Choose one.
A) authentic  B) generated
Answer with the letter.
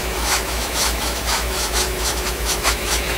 B